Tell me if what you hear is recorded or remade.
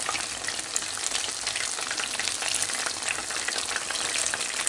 recorded